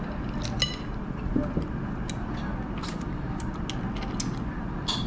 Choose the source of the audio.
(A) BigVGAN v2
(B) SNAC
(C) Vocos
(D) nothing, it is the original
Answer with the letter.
D